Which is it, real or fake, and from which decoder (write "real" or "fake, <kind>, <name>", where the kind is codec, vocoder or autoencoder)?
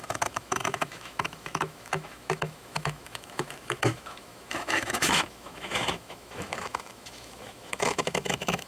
fake, autoencoder, DAC-VAE